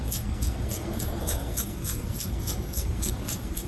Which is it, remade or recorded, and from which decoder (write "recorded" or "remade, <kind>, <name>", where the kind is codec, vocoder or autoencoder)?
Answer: remade, codec, SNAC